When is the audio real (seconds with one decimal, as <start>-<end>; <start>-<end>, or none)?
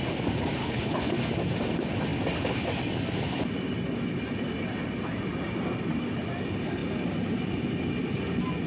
0.0-0.6; 1.1-8.7